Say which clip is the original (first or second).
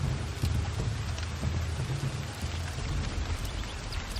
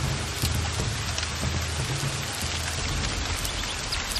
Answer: second